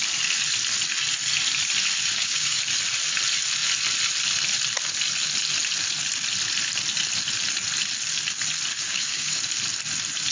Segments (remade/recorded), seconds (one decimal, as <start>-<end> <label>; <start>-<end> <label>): 0.0-2.1 recorded; 2.1-2.6 remade; 2.6-8.7 recorded; 8.7-9.4 remade; 9.4-10.3 recorded